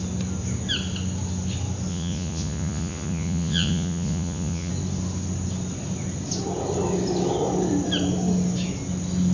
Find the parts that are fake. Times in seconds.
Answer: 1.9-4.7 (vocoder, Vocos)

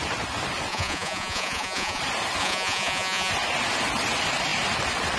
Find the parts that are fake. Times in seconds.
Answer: 0.7-2.0 (vocoder, Vocos); 2.4-3.3

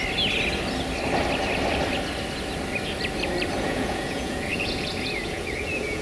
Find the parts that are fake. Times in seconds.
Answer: 3.6-6.0 (vocoder, Vocos)

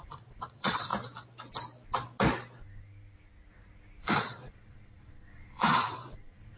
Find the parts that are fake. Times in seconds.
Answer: 0.0-0.9 (vocoder, Vocos); 4.0-6.6

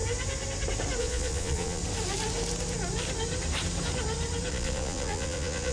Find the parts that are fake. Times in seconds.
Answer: 1.0-1.8 (vocoder, Vocos); 4.5-5.7